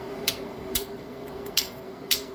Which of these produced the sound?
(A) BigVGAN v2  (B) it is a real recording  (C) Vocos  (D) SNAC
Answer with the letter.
D